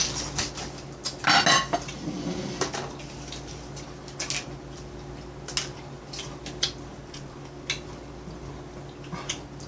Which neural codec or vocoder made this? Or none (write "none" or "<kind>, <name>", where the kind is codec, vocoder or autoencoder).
none